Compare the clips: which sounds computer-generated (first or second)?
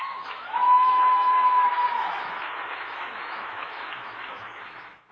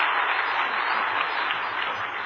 first